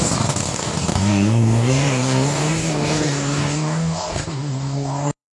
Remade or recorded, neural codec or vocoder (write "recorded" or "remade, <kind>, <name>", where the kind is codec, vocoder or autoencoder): remade, codec, DAC